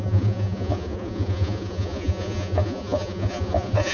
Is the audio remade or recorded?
remade